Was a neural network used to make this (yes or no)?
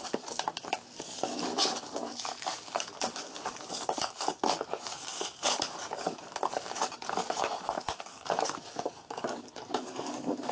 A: yes